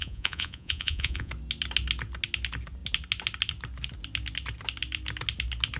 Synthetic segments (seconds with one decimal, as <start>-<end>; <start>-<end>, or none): 0.0-1.3